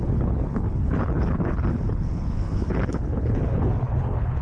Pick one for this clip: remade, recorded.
remade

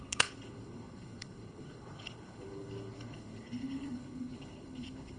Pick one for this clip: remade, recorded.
remade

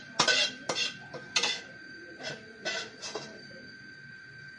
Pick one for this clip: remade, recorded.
recorded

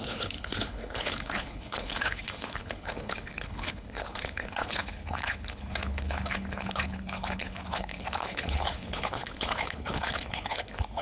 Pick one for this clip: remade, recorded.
remade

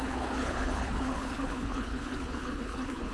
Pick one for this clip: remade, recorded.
remade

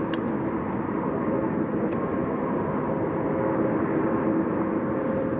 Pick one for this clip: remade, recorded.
recorded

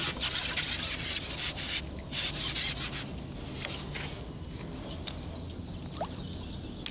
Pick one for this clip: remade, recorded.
recorded